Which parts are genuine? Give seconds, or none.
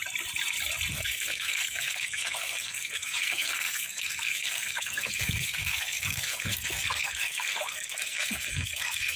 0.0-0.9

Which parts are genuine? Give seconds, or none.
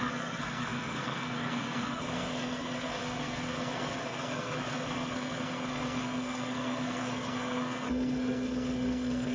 none